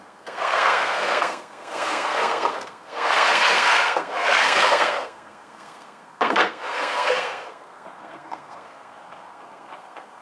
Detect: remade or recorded remade